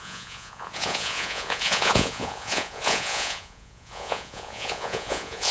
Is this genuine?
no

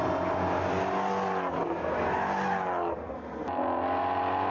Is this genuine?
yes